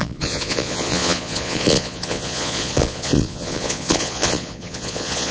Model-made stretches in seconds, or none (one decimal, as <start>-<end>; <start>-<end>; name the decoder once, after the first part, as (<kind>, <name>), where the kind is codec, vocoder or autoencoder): 0.0-5.3 (vocoder, Vocos)